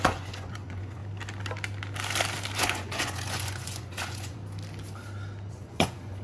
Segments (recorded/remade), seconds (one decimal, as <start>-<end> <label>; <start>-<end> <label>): 0.0-1.0 remade; 1.0-2.6 recorded; 2.6-4.4 remade; 4.4-5.5 recorded; 5.5-6.2 remade